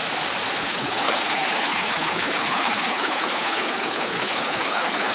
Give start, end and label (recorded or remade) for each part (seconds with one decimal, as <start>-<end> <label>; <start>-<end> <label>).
0.0-0.6 recorded; 0.6-5.1 remade